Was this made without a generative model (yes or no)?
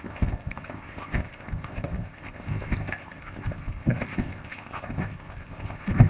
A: no